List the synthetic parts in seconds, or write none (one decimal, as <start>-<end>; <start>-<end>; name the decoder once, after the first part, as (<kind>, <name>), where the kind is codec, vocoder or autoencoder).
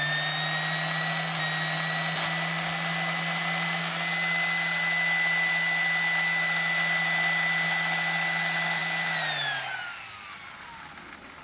none